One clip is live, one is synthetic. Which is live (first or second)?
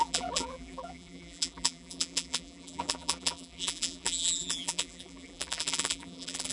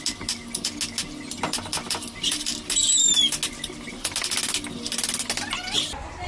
second